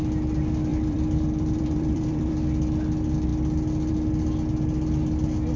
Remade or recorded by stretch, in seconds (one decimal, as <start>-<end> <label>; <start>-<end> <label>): 0.0-0.7 recorded; 0.7-2.3 remade; 2.3-5.6 recorded